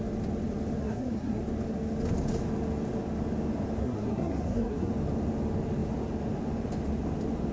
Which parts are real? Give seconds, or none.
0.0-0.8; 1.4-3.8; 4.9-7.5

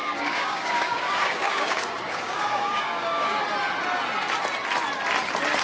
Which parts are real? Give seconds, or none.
3.4-5.6

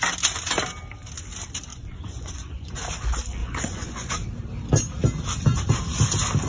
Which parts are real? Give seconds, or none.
0.0-1.7; 2.8-3.4; 4.1-6.5

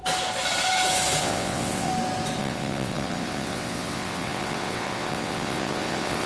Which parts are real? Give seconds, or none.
0.0-1.2; 1.9-2.4

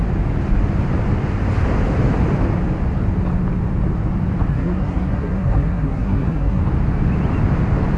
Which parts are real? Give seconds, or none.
0.0-4.5; 6.6-8.0

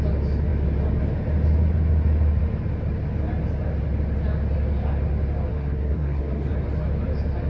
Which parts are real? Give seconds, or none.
0.0-5.5; 6.5-7.5